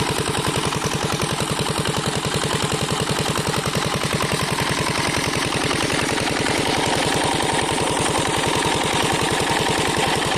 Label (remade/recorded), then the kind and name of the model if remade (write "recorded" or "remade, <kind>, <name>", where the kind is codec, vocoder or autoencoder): recorded